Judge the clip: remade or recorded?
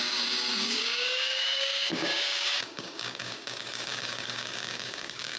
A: remade